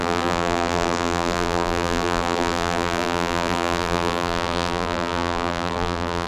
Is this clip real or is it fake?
fake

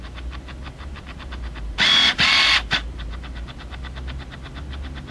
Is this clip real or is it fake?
real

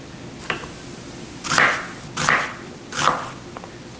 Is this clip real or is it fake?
real